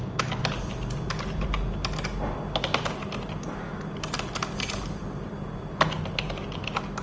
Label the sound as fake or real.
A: real